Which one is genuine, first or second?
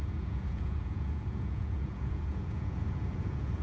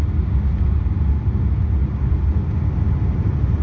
second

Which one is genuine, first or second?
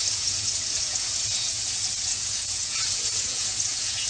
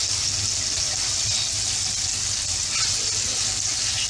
second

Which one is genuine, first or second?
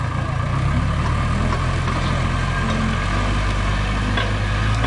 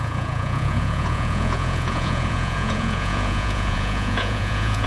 first